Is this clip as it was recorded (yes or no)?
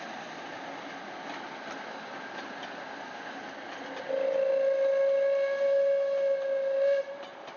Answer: yes